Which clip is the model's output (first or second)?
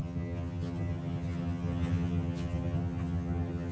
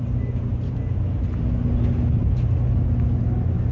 first